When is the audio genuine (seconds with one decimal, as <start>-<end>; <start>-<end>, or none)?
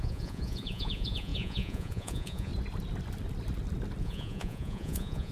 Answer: 2.5-4.0